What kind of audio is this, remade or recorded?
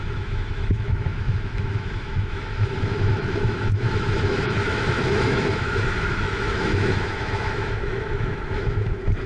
remade